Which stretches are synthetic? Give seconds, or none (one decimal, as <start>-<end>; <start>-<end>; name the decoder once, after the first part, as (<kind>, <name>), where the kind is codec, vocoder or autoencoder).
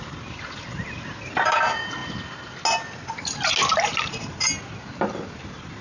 none